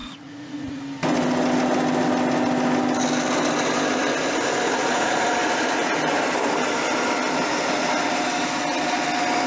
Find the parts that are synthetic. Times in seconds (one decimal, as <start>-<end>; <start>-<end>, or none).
0.0-0.8; 4.8-5.3